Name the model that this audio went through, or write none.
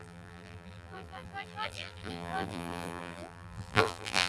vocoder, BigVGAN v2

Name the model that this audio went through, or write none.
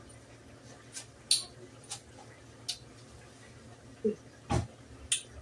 none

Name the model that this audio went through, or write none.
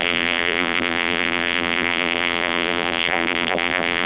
vocoder, BigVGAN v2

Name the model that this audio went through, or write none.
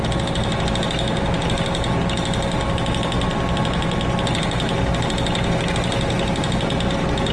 none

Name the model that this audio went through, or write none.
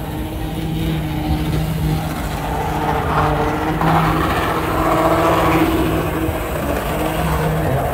none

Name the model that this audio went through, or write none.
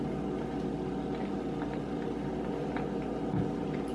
none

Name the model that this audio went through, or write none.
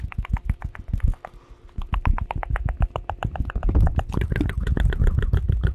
none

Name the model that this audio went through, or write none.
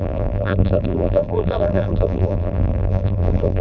vocoder, BigVGAN v2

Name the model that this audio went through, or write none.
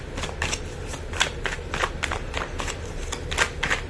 none